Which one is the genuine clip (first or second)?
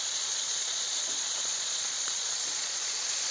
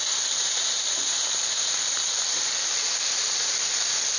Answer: second